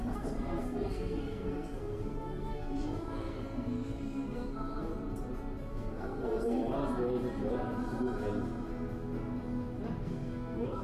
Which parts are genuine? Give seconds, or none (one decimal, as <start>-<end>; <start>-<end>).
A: 4.9-5.7; 6.8-10.0